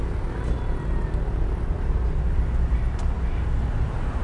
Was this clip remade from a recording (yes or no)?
no